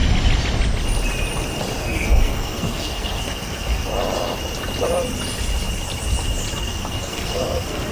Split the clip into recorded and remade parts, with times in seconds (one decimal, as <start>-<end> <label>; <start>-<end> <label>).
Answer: 0.0-1.8 recorded; 1.8-3.9 remade; 3.9-6.6 recorded; 6.6-7.9 remade